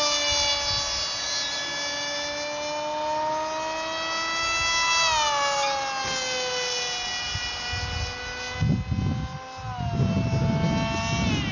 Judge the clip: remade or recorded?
recorded